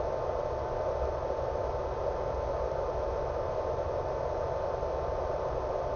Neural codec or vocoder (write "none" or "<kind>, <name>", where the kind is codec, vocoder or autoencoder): none